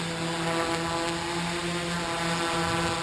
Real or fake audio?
real